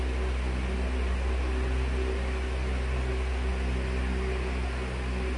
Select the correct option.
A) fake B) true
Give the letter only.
B